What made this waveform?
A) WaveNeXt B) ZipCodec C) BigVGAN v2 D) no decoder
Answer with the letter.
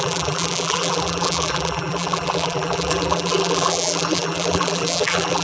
C